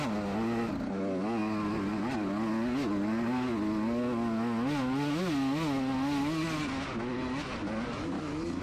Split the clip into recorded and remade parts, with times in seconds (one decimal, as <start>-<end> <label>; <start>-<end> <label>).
0.0-8.6 recorded